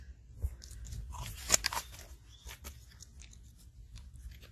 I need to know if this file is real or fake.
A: real